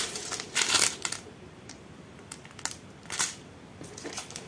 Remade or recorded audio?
recorded